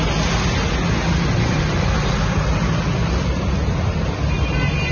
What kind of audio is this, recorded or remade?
recorded